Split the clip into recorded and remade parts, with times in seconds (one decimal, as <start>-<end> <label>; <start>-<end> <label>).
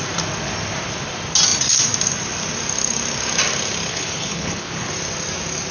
0.0-3.9 recorded; 3.9-4.9 remade; 4.9-5.7 recorded